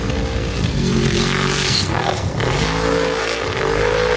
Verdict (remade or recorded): remade